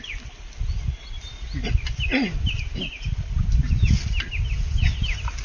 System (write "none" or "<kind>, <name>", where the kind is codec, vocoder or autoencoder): none